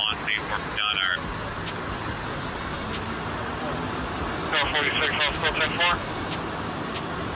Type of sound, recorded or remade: recorded